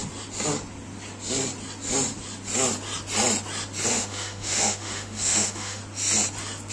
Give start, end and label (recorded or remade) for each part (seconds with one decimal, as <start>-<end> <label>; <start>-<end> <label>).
0.0-3.9 recorded; 3.9-5.8 remade; 5.8-6.7 recorded